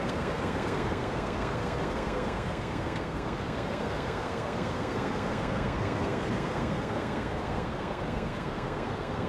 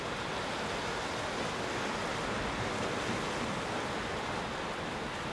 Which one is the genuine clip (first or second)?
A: second